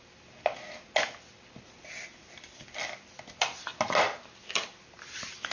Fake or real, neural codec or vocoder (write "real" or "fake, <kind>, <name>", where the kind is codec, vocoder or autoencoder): real